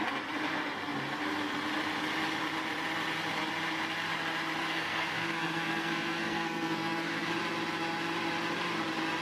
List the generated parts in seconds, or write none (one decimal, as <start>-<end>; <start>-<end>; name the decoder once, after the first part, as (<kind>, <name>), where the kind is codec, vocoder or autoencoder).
4.6-7.3 (codec, SNAC)